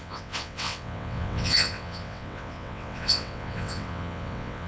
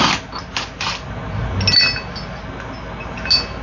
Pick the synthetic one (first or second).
first